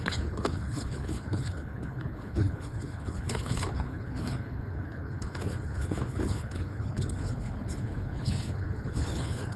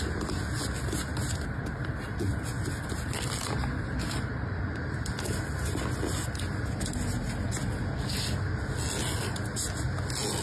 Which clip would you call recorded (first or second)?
second